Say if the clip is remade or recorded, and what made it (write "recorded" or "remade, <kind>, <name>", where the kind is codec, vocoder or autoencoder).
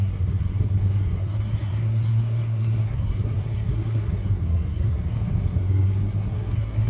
remade, codec, SNAC